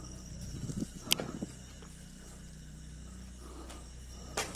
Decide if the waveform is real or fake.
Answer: real